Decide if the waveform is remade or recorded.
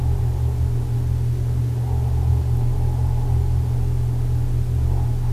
recorded